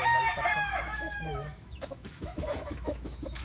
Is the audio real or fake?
fake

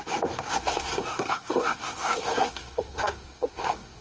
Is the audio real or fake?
fake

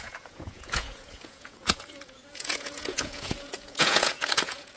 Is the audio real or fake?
fake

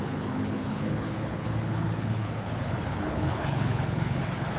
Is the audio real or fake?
fake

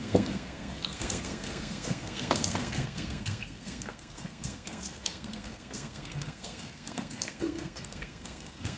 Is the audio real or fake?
fake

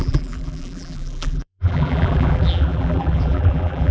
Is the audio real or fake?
fake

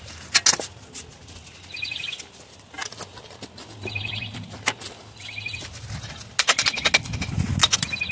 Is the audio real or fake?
real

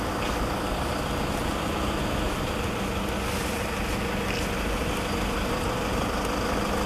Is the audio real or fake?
real